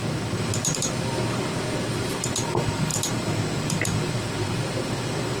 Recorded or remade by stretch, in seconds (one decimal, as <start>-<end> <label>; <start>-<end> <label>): 0.0-5.4 recorded